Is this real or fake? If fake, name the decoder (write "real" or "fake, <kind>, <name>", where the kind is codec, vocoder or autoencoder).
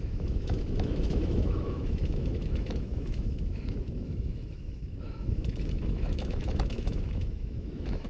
fake, autoencoder, DAC-VAE